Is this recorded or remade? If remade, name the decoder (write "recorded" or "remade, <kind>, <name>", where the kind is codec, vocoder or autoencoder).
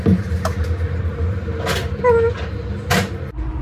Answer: recorded